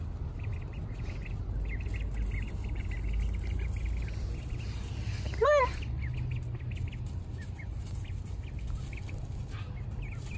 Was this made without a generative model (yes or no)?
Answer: yes